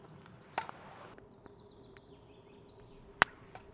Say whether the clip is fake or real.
real